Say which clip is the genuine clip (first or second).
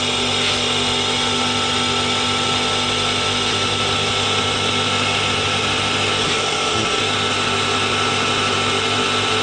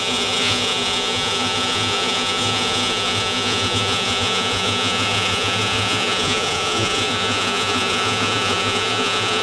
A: first